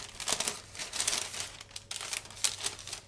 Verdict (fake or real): real